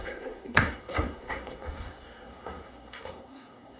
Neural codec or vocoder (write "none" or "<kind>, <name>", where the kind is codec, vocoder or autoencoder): codec, SNAC